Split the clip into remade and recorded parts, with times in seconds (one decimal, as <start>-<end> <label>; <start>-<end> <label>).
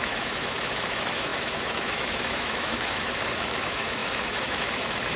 0.0-5.2 remade